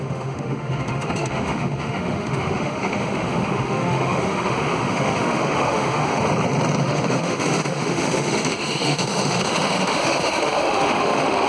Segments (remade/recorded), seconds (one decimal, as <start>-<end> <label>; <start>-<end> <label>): 0.0-6.2 remade; 6.2-6.8 recorded; 6.8-11.5 remade